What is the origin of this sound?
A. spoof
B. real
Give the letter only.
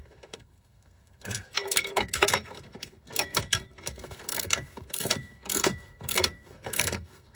A